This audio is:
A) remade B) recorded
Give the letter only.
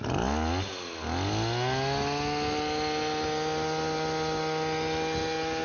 B